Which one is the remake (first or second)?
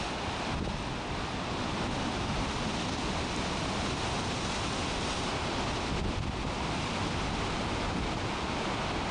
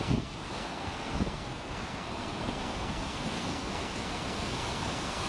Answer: second